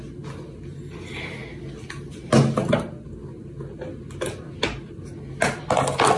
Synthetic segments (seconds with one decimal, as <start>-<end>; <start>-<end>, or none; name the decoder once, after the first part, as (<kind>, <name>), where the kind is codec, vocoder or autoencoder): none